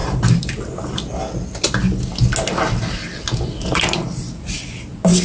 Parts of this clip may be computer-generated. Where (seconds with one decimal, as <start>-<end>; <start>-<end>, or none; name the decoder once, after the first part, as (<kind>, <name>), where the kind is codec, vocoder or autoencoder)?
0.0-1.1 (vocoder, BigVGAN v2)